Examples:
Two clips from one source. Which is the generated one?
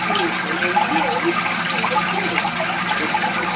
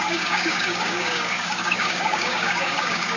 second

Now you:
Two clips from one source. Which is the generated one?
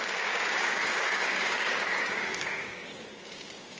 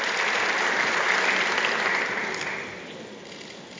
first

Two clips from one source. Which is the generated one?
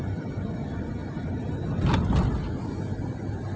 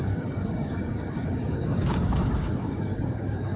second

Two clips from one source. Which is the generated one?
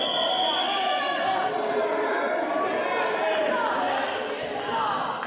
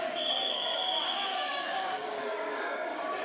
second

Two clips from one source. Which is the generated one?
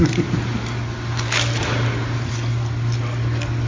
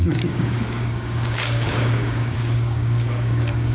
second